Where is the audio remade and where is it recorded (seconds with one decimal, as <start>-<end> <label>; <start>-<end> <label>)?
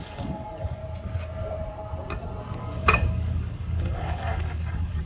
0.0-0.8 remade; 0.8-2.6 recorded; 2.6-5.1 remade